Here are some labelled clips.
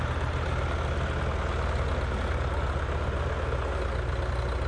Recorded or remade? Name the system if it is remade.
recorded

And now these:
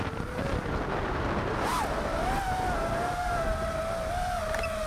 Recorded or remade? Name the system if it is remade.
recorded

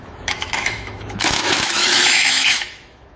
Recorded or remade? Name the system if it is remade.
remade, autoencoder, DAC-VAE